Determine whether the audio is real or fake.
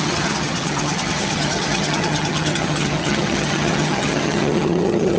fake